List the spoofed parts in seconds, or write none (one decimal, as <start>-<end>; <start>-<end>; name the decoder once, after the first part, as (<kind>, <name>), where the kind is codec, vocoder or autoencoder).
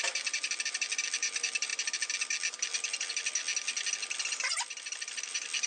0.0-1.7 (vocoder, BigVGAN v2); 4.3-5.7